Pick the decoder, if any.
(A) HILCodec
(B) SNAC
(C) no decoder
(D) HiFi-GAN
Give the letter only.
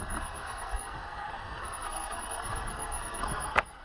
B